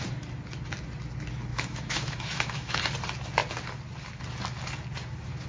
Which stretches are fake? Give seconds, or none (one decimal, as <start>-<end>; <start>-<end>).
1.5-2.8